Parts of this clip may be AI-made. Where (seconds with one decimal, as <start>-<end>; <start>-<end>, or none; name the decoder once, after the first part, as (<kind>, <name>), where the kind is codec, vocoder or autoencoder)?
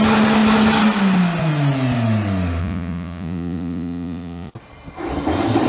2.6-4.5 (vocoder, Vocos)